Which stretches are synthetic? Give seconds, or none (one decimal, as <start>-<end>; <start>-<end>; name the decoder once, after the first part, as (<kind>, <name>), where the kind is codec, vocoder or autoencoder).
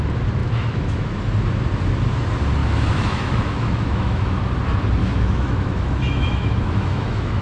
0.4-1.2 (autoencoder, DAC-VAE); 2.6-4.4; 5.0-7.4